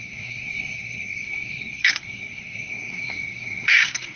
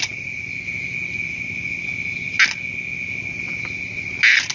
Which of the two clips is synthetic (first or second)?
first